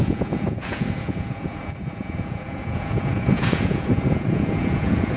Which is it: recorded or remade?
remade